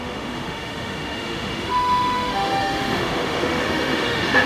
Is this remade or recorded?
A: remade